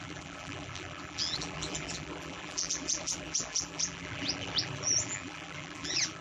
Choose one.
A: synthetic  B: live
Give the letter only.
A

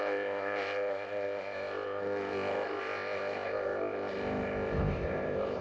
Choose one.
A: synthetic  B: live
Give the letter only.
A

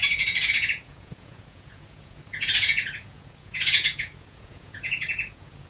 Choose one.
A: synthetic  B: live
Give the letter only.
A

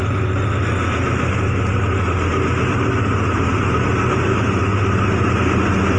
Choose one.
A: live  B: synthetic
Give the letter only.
A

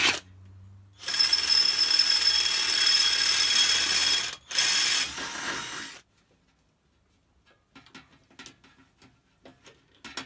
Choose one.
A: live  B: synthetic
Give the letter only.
A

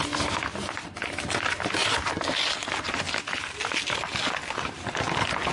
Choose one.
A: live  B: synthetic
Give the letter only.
A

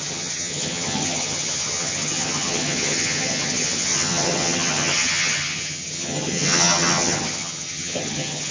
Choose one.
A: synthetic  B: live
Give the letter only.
A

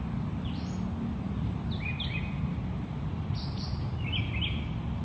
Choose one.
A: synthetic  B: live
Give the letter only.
B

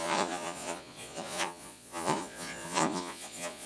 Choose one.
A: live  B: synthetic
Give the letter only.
B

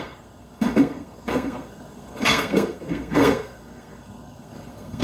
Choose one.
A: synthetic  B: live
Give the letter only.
A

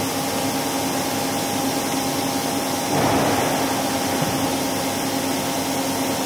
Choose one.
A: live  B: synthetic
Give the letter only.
A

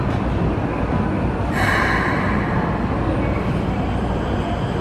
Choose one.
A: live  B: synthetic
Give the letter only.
A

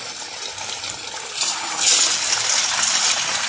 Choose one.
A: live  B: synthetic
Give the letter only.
A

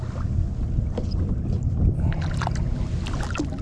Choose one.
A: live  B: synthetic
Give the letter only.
A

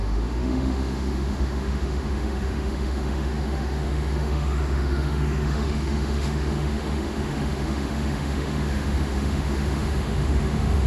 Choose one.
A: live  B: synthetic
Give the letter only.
B